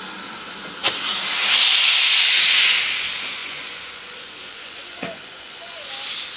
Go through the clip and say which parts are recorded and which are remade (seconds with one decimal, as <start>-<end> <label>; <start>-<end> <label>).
0.0-3.4 recorded; 3.4-5.9 remade; 5.9-6.4 recorded